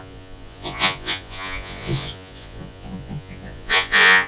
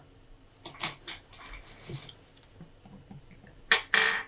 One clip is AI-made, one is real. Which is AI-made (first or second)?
first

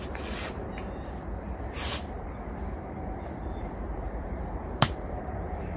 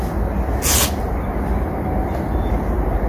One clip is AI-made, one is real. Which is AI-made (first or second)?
first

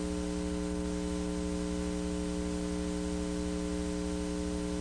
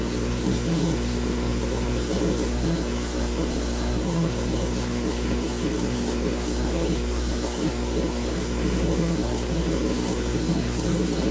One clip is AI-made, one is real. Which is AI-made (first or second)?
second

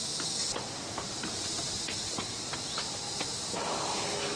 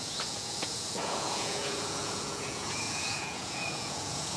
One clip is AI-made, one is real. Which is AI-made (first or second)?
second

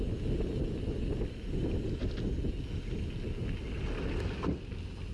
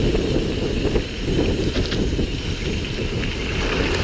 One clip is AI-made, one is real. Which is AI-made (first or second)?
second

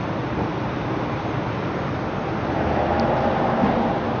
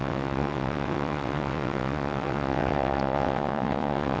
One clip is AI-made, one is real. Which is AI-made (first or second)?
second